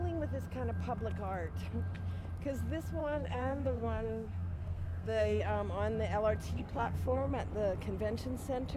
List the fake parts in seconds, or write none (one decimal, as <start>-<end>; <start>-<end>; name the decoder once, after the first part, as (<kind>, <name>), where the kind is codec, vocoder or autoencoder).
3.0-5.4 (codec, SNAC); 6.5-7.3